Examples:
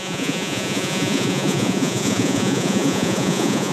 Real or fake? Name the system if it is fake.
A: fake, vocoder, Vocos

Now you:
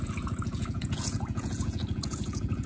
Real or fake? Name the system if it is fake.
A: fake, vocoder, Vocos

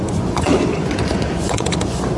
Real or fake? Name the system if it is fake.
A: fake, vocoder, Vocos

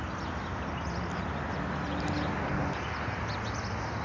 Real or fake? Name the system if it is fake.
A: real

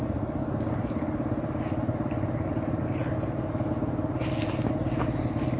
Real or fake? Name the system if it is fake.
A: real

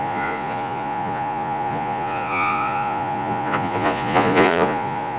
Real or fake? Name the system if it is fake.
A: fake, vocoder, Vocos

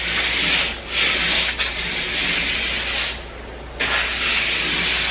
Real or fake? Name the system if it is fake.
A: real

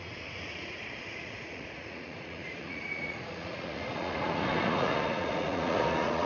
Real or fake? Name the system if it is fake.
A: fake, vocoder, Vocos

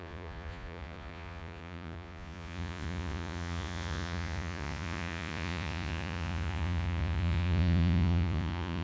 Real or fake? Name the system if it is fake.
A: fake, vocoder, Vocos